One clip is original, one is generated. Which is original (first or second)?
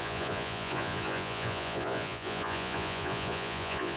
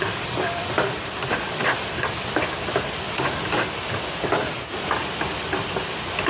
second